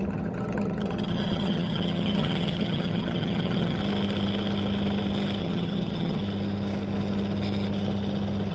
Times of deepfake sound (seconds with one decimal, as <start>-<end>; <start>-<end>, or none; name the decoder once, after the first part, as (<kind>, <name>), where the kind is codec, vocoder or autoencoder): 0.0-3.8 (vocoder, HiFi-GAN); 5.4-6.2